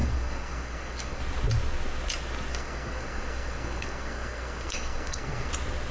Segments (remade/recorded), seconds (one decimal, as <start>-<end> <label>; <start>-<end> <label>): 0.0-1.2 remade; 1.2-2.5 recorded; 2.5-5.5 remade; 5.5-5.9 recorded